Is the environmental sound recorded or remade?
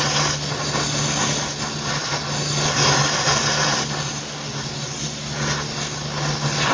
recorded